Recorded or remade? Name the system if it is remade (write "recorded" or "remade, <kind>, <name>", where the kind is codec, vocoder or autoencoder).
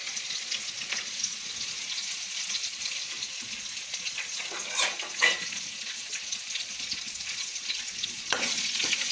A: remade, vocoder, Vocos